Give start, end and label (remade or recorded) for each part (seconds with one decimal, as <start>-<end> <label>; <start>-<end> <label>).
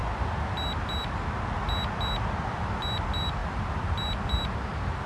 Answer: 0.0-5.1 recorded